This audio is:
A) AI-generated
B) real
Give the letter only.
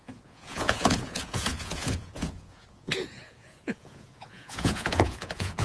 A